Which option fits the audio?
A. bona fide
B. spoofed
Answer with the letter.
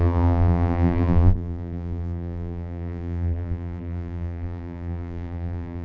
B